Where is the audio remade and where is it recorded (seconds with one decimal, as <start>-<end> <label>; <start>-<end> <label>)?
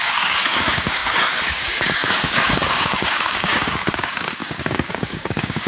0.0-5.7 remade